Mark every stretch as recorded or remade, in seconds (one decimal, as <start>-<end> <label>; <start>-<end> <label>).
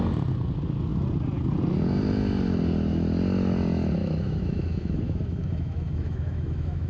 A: 0.0-4.0 recorded; 4.0-6.9 remade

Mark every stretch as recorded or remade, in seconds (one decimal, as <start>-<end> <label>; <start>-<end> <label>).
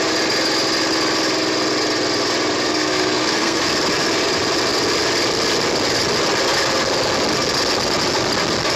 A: 0.0-2.7 recorded; 2.7-3.6 remade; 3.6-8.8 recorded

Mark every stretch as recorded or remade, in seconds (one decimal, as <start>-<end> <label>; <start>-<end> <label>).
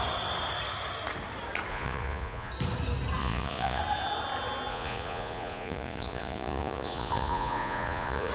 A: 0.0-1.7 recorded; 1.7-2.5 remade; 2.5-3.2 recorded; 3.2-3.8 remade; 3.8-4.7 recorded; 4.7-8.3 remade